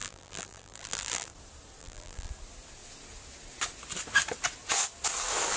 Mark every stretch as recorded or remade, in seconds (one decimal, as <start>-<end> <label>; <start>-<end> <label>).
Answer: 0.0-1.3 remade; 1.3-1.8 recorded; 1.8-2.3 remade; 2.3-5.6 recorded